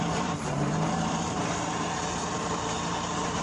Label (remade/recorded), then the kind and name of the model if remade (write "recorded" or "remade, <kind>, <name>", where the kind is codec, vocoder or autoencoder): remade, vocoder, BigVGAN v2